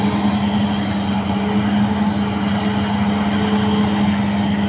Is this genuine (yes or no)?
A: yes